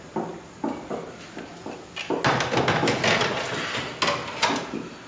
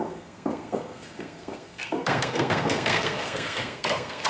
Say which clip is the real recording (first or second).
first